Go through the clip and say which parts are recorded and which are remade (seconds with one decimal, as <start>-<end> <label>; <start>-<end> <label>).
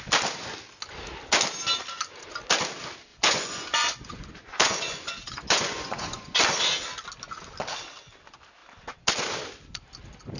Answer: 0.0-3.1 recorded; 3.1-6.4 remade; 6.4-10.4 recorded